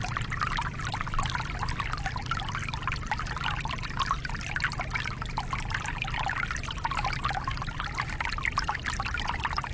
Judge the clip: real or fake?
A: real